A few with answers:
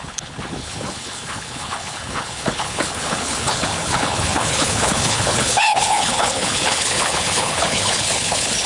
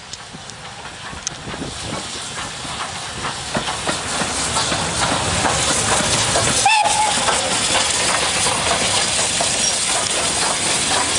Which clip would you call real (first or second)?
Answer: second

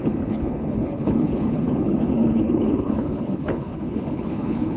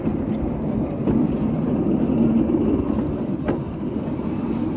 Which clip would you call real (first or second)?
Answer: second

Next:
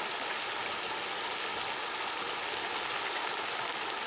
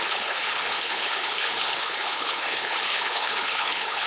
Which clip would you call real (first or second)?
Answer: first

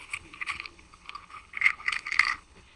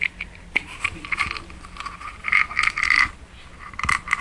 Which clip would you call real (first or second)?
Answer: second